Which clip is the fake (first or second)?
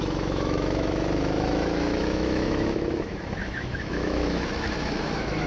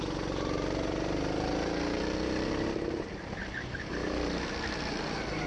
first